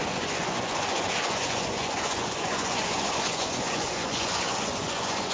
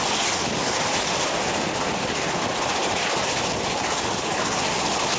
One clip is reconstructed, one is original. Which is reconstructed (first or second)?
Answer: first